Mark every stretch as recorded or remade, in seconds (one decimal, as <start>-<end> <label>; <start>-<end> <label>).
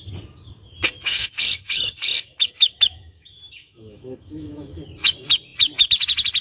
0.0-1.0 recorded; 1.0-4.8 remade; 4.8-6.4 recorded